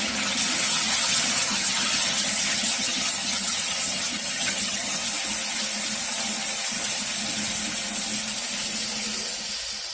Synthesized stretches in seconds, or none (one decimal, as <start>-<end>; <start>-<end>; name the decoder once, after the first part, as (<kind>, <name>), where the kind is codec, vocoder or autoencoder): 0.0-5.0 (vocoder, HiFi-GAN)